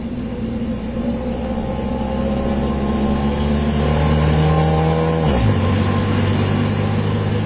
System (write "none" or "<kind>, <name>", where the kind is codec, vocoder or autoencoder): none